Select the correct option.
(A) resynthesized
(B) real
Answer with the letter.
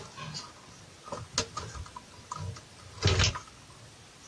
B